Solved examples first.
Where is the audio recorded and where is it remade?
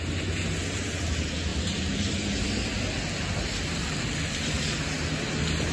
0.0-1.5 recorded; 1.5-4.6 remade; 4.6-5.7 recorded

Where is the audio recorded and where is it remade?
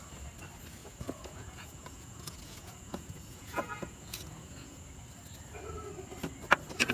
0.0-0.8 recorded; 0.8-4.9 remade; 4.9-6.9 recorded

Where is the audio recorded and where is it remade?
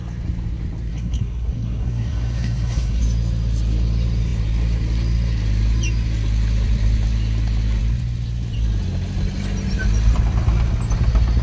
0.0-0.9 recorded; 0.9-3.0 remade; 3.0-11.4 recorded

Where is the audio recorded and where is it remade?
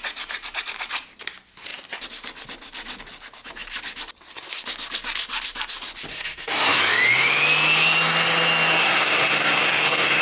0.0-6.1 recorded; 6.1-6.8 remade; 6.8-8.8 recorded; 8.8-10.2 remade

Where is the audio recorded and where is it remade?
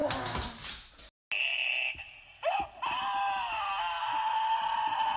0.0-0.7 remade; 0.7-5.2 recorded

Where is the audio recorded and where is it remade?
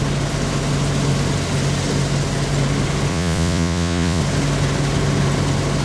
0.0-3.1 recorded; 3.1-4.2 remade; 4.2-5.8 recorded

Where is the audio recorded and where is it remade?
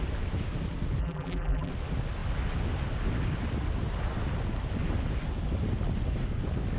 0.0-1.0 recorded; 1.0-1.7 remade; 1.7-6.8 recorded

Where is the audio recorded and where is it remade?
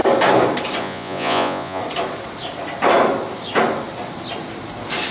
0.0-0.8 recorded; 0.8-1.8 remade; 1.8-5.1 recorded